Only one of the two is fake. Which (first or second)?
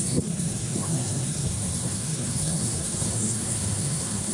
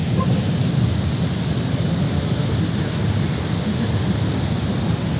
first